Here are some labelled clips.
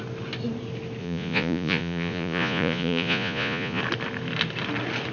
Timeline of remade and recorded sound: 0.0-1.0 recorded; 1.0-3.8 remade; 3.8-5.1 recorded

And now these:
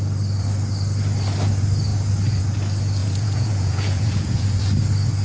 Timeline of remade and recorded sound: 0.0-3.0 recorded; 3.0-4.6 remade; 4.6-5.2 recorded

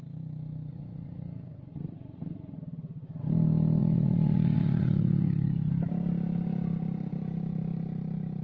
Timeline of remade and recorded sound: 0.0-0.7 recorded; 0.7-2.6 remade; 2.6-3.8 recorded; 3.8-5.7 remade; 5.7-8.4 recorded

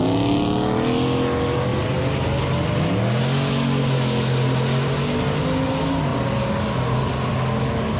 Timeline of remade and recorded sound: 0.0-8.0 recorded

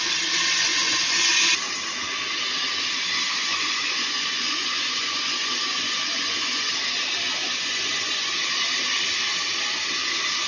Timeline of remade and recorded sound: 0.0-0.7 recorded; 0.7-1.3 remade; 1.3-3.4 recorded; 3.4-6.7 remade; 6.7-7.4 recorded; 7.4-8.3 remade; 8.3-10.5 recorded

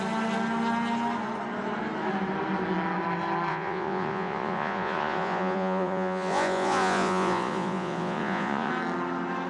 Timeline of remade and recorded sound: 0.0-3.5 recorded; 3.5-8.7 remade; 8.7-9.5 recorded

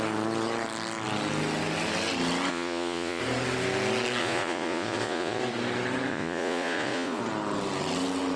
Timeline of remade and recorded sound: 0.0-2.5 recorded; 2.5-3.2 remade; 3.2-4.2 recorded; 4.2-5.4 remade; 5.4-6.1 recorded; 6.1-7.2 remade; 7.2-8.4 recorded

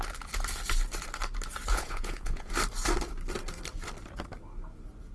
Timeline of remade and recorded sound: 0.0-1.7 recorded; 1.7-2.5 remade; 2.5-5.1 recorded